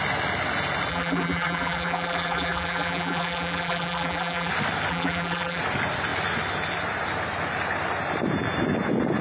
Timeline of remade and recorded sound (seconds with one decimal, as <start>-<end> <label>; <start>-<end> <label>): 0.0-0.9 recorded; 0.9-4.5 remade; 4.5-4.9 recorded; 4.9-5.6 remade; 5.6-9.2 recorded